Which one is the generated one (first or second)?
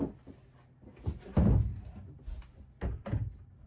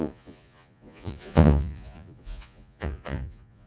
second